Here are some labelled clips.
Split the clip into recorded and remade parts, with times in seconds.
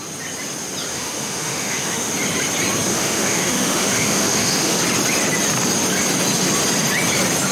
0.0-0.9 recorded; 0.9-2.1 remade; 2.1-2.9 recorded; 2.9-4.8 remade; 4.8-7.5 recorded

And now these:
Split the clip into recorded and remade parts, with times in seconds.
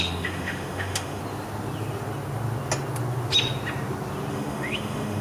0.0-1.2 remade; 1.2-4.3 recorded; 4.3-5.2 remade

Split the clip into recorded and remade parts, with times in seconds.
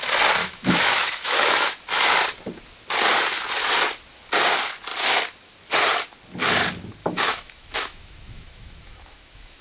0.0-0.4 recorded; 0.4-1.7 remade; 1.7-7.0 recorded; 7.0-9.6 remade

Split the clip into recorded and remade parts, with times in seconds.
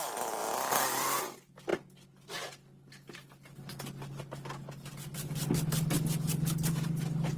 0.0-7.4 recorded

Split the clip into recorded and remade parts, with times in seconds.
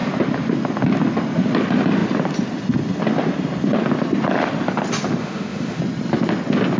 0.0-5.2 recorded; 5.2-5.8 remade; 5.8-6.8 recorded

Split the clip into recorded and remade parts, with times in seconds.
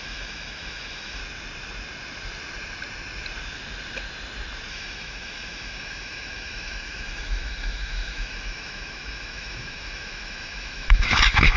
0.0-1.2 remade; 1.2-4.7 recorded; 4.7-11.6 remade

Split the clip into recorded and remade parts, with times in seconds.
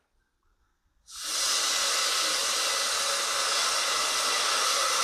0.0-5.0 recorded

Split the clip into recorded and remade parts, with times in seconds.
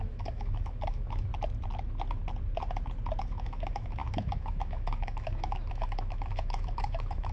0.0-1.3 remade; 1.3-3.2 recorded; 3.2-7.3 remade